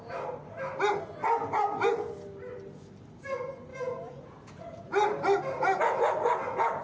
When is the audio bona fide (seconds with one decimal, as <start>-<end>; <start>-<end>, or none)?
0.0-3.7; 4.5-6.8